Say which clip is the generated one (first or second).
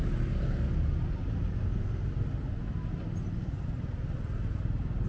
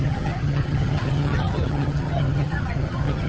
second